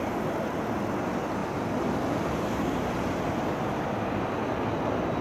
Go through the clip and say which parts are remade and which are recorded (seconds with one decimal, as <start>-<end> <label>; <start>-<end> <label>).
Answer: 0.0-5.2 recorded